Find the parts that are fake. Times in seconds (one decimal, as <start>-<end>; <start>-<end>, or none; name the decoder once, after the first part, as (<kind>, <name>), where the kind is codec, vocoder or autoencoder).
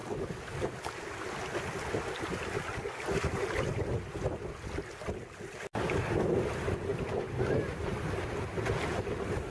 none